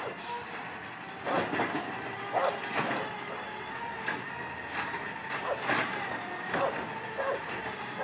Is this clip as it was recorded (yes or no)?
yes